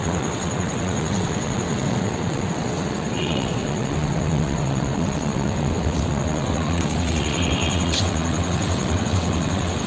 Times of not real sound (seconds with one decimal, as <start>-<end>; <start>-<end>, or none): 0.0-9.9